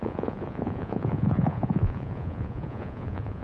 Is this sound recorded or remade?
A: remade